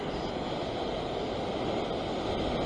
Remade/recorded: recorded